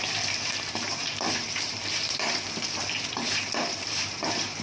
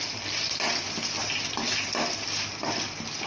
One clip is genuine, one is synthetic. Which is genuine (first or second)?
second